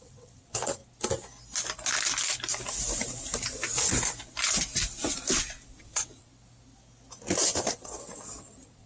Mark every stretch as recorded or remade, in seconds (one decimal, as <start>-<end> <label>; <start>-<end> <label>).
0.0-0.8 remade; 0.8-5.8 recorded; 5.8-6.3 remade; 6.3-7.7 recorded; 7.7-8.9 remade